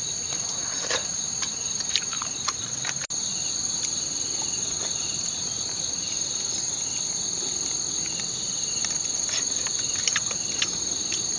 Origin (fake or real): real